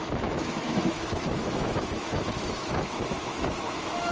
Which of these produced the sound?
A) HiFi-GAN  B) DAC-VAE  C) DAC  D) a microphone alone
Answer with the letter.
B